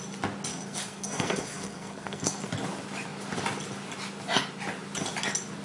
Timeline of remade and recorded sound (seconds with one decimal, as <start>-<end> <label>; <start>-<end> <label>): 0.0-0.5 recorded; 0.5-2.5 remade; 2.5-5.6 recorded